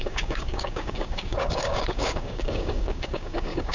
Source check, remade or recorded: remade